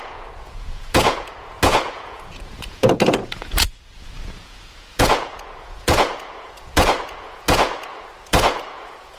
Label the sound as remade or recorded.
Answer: remade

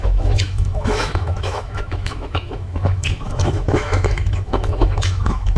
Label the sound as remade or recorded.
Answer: remade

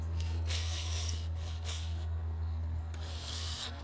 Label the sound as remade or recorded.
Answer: remade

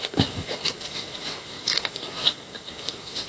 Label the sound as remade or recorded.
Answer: remade